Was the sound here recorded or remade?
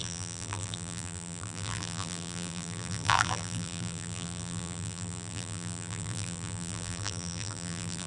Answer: remade